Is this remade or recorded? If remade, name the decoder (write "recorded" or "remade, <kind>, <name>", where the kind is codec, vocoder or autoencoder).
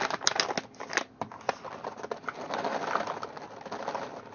recorded